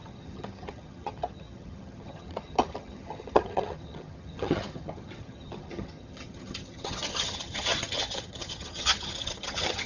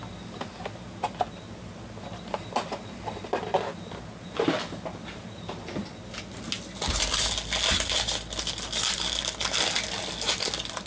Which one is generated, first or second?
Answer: first